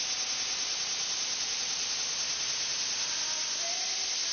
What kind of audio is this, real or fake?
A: real